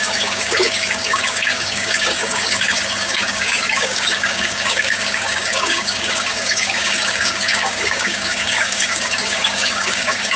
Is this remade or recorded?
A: remade